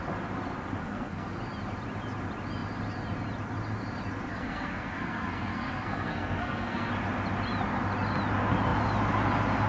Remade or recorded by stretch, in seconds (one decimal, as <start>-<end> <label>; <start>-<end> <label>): 0.0-0.8 recorded; 0.8-1.4 remade; 1.4-4.3 recorded; 4.3-6.9 remade; 6.9-9.7 recorded

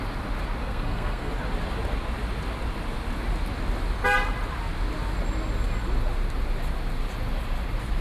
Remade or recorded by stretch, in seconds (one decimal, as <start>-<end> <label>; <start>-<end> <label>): 0.0-0.6 recorded; 0.6-1.3 remade; 1.3-8.0 recorded